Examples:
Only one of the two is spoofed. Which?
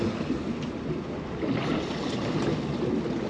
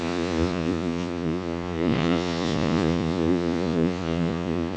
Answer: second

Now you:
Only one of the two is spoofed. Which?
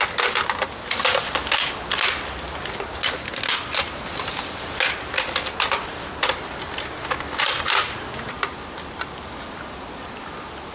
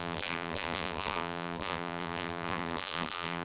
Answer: second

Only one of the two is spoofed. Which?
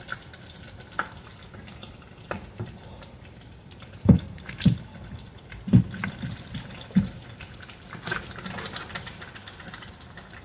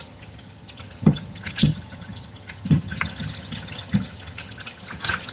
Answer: second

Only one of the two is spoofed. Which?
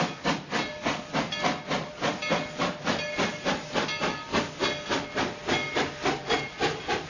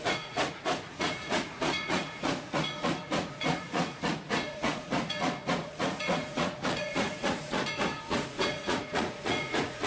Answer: second